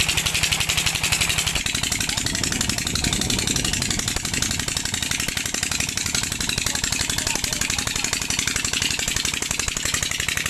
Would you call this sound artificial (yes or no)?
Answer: no